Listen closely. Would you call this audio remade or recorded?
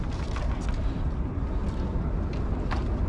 recorded